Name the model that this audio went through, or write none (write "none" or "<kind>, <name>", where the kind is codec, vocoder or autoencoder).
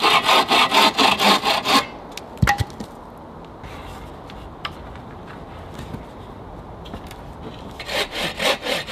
none